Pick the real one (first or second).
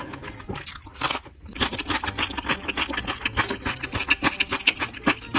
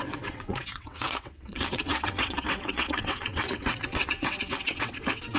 first